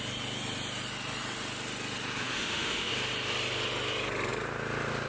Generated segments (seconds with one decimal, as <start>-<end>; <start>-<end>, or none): 2.2-2.9